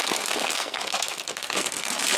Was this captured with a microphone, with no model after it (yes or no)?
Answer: no